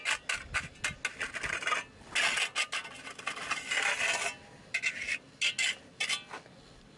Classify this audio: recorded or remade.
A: recorded